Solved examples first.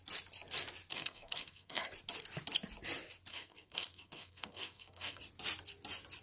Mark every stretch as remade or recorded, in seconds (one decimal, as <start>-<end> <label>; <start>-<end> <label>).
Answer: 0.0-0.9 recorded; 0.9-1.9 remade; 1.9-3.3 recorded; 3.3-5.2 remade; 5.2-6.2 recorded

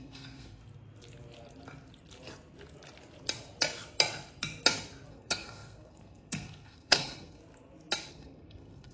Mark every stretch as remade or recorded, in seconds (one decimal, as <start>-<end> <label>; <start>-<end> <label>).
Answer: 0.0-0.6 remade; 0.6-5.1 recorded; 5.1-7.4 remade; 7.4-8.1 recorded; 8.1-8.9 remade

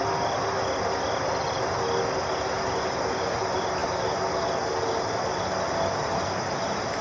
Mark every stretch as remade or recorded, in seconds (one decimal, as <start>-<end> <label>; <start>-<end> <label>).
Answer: 0.0-7.0 recorded

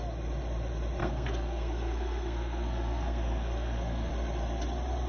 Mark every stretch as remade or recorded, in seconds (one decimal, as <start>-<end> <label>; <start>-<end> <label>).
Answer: 0.0-1.0 recorded; 1.0-4.1 remade; 4.1-5.1 recorded

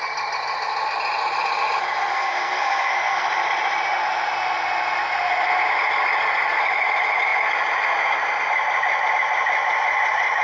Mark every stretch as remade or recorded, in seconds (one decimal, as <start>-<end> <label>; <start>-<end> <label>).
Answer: 0.0-2.1 recorded; 2.1-3.3 remade; 3.3-10.4 recorded

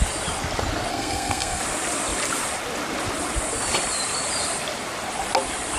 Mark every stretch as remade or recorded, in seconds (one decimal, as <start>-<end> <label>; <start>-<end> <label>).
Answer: 0.0-0.9 recorded; 0.9-1.6 remade; 1.6-5.8 recorded

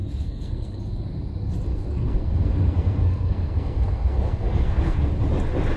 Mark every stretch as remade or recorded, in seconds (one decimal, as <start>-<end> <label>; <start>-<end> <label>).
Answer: 0.0-0.8 remade; 0.8-1.7 recorded; 1.7-5.1 remade; 5.1-5.8 recorded

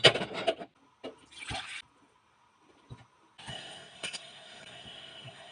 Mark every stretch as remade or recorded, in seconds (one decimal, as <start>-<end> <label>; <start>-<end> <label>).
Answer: 0.0-3.5 recorded; 3.5-5.5 remade